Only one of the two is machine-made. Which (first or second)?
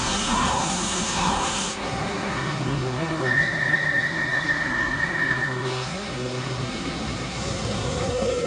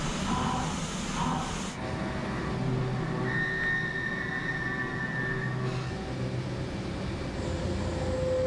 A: first